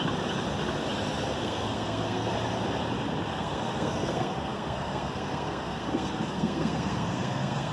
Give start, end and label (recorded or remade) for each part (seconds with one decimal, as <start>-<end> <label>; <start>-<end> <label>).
0.0-1.4 recorded; 1.4-2.3 remade; 2.3-3.3 recorded; 3.3-7.7 remade